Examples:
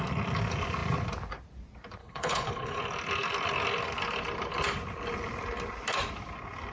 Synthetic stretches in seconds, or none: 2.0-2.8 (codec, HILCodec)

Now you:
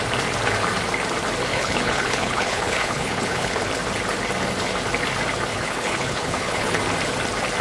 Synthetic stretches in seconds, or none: 1.5-3.6 (codec, HILCodec); 5.5-6.8

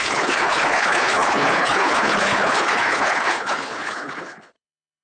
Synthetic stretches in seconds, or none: 0.0-5.0 (codec, HILCodec)